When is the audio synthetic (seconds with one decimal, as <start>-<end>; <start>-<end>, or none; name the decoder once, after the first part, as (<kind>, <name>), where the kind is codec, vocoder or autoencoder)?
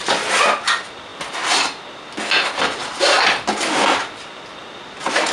none